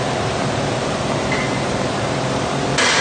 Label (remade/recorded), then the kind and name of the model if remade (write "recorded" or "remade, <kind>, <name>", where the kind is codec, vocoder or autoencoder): recorded